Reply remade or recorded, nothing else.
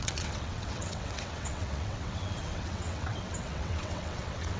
remade